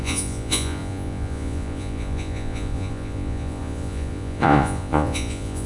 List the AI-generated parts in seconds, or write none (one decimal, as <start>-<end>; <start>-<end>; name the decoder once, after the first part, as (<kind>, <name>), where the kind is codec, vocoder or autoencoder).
0.0-5.7 (vocoder, Vocos)